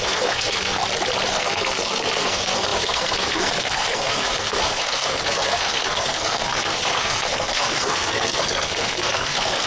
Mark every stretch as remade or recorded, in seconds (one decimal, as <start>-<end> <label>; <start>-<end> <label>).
0.0-0.8 remade; 0.8-1.3 recorded; 1.3-9.7 remade